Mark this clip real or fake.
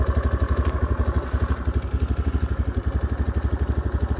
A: real